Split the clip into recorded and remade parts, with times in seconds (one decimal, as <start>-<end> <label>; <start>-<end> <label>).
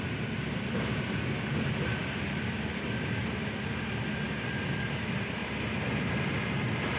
0.0-7.0 recorded